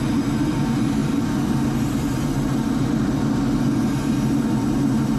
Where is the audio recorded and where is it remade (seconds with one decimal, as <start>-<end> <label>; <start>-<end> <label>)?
0.0-5.2 recorded